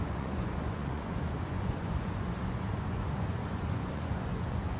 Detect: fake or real fake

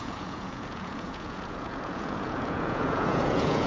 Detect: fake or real fake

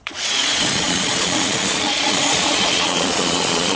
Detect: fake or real fake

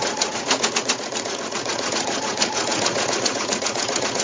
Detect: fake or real fake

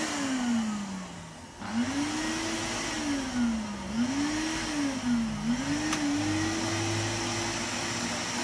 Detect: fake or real real